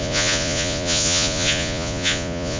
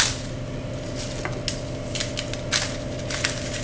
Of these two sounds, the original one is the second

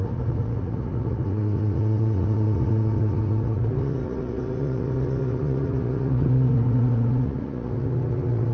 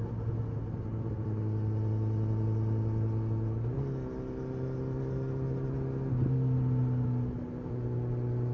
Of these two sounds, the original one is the second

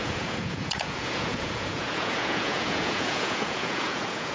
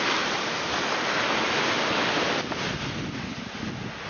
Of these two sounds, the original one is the second